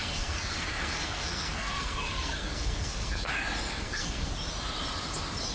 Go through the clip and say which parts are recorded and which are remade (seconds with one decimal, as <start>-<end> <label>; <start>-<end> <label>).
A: 0.0-3.3 remade; 3.3-3.7 recorded; 3.7-4.3 remade; 4.3-5.5 recorded